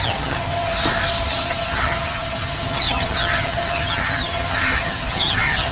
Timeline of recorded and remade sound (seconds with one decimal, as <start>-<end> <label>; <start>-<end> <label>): 0.0-0.7 remade; 0.7-1.3 recorded; 1.3-5.7 remade